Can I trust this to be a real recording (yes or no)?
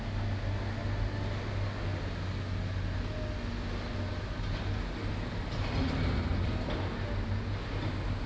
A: yes